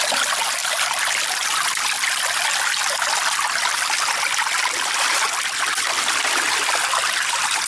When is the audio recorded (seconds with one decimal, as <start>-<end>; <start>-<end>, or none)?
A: 0.0-7.7